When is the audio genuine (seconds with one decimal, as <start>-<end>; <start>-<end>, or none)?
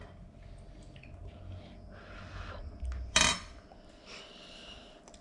0.0-5.2